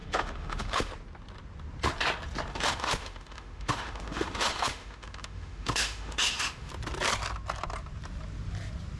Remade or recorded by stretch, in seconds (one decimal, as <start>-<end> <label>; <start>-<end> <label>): 0.0-0.9 remade; 0.9-2.5 recorded; 2.5-6.7 remade; 6.7-9.0 recorded